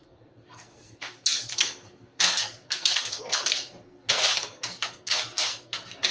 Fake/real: fake